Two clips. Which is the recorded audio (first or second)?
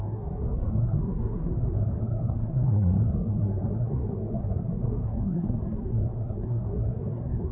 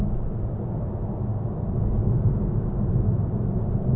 second